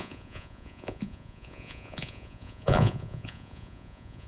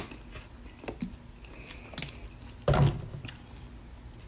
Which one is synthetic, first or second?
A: first